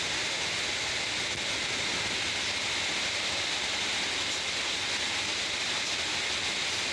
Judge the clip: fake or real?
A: real